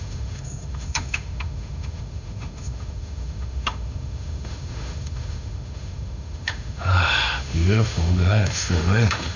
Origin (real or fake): fake